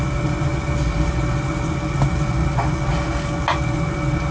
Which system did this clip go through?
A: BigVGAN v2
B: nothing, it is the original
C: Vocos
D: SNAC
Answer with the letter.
B